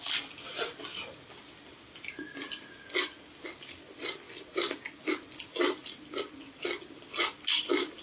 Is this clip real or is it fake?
real